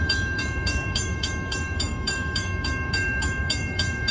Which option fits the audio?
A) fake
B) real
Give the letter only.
A